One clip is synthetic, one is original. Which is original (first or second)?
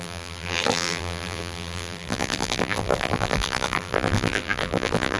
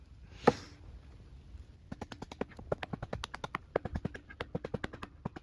second